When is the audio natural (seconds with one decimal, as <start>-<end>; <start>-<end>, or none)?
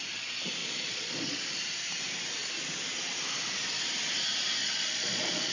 0.0-0.6; 1.4-4.6